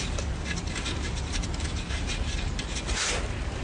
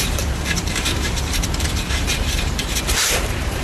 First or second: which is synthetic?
second